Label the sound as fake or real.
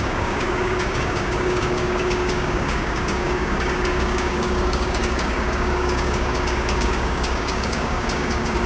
fake